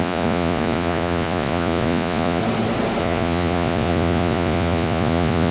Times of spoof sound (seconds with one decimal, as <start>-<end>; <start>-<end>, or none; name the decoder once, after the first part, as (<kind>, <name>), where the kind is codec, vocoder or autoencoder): 0.0-2.4 (vocoder, Vocos); 3.0-5.5